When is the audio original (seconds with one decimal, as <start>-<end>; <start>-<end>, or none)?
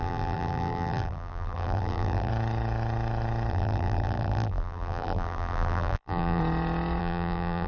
2.3-3.5; 6.4-7.0